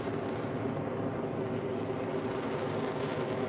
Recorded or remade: recorded